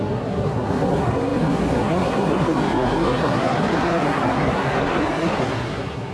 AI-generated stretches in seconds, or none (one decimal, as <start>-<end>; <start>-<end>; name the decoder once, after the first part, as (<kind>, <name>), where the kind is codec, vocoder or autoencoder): 0.0-6.1 (codec, SNAC)

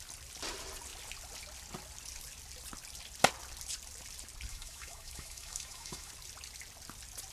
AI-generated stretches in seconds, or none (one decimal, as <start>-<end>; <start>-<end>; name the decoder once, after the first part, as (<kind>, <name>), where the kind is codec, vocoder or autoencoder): 4.5-6.1 (autoencoder, DAC-VAE)

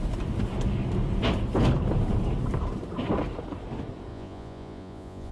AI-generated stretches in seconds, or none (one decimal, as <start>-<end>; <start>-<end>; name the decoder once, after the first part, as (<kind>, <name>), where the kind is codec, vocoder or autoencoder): 4.1-5.3 (vocoder, Vocos)

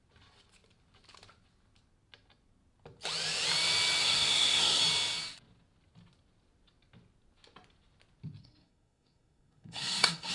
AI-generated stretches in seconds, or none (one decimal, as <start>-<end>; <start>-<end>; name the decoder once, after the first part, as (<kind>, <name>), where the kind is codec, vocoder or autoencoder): 4.0-4.8 (codec, SNAC); 8.4-10.3

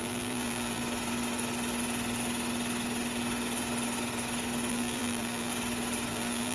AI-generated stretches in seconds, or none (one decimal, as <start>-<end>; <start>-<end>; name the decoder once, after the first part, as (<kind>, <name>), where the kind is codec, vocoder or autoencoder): 0.0-0.8 (vocoder, BigVGAN v2); 4.7-5.5; 6.1-6.5

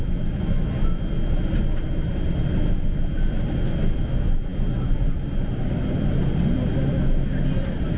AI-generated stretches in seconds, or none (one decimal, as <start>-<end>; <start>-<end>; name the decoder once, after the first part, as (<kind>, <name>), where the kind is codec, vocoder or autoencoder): none

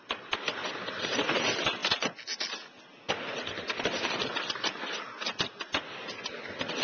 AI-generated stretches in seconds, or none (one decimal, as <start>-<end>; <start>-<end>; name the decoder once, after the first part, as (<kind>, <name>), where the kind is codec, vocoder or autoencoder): none